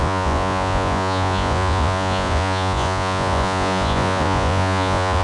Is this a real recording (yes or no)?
no